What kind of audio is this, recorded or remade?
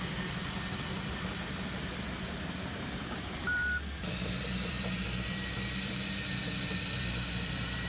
remade